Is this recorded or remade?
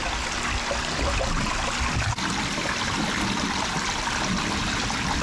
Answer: recorded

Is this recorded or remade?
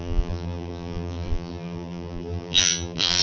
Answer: remade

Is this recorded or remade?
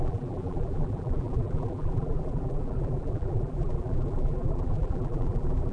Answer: remade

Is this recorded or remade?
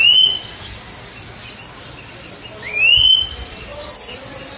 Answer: recorded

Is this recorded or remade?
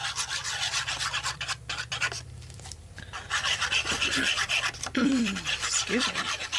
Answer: remade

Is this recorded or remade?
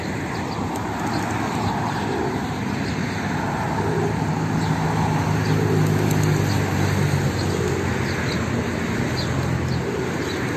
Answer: recorded